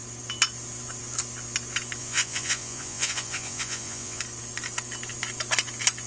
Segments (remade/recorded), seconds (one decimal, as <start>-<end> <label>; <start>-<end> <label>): 0.0-2.0 recorded; 2.0-4.2 remade; 4.2-6.1 recorded